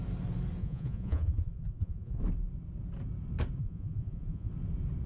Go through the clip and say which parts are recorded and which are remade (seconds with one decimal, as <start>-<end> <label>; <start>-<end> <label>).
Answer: 0.0-0.6 recorded; 0.6-2.2 remade; 2.2-3.6 recorded; 3.6-4.5 remade; 4.5-5.1 recorded